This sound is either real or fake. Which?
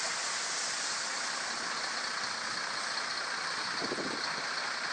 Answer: real